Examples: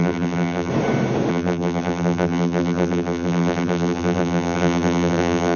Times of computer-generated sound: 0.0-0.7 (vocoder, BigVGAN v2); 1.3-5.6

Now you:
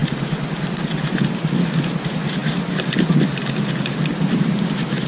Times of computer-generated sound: none

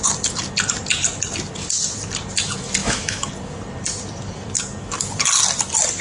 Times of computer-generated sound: 2.8-3.3 (autoencoder, DAC-VAE)

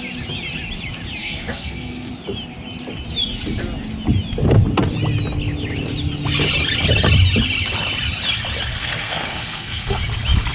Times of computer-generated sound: 1.2-2.1 (codec, SNAC); 8.7-10.0

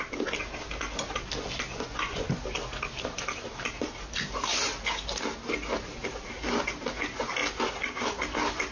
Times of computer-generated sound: 1.7-2.3 (vocoder, Vocos)